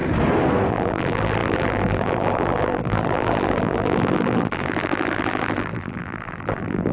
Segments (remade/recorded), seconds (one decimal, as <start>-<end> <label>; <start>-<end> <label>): 0.0-0.7 recorded; 0.7-6.9 remade